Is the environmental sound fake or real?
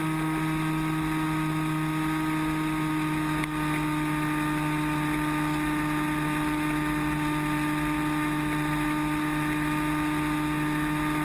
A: real